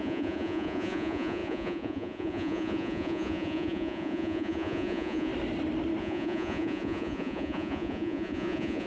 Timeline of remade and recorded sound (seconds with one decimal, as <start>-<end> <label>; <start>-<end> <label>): 0.0-5.3 remade; 5.3-6.0 recorded; 6.0-8.9 remade